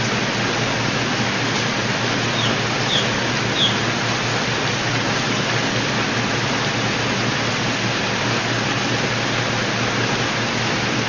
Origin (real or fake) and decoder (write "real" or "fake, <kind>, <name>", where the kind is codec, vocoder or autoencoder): real